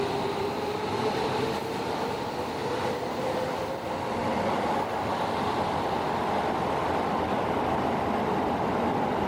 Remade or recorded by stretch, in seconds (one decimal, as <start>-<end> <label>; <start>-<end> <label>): 0.0-9.3 recorded